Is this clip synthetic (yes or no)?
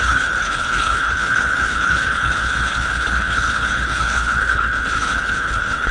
yes